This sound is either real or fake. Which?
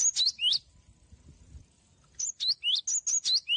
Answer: real